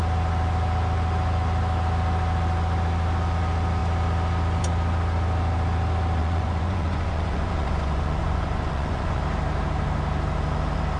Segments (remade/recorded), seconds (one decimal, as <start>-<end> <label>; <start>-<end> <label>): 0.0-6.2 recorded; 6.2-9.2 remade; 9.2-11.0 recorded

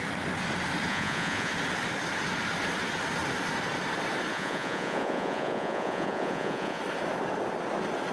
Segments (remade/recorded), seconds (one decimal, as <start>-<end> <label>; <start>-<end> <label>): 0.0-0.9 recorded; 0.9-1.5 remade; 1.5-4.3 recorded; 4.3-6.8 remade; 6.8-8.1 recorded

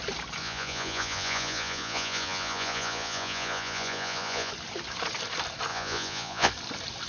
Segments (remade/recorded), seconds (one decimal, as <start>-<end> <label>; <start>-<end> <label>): 0.0-0.4 recorded; 0.4-4.5 remade; 4.5-5.7 recorded; 5.7-6.5 remade; 6.5-7.1 recorded

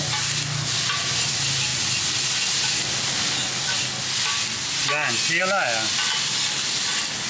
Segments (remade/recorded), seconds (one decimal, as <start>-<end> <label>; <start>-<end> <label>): 0.0-7.3 recorded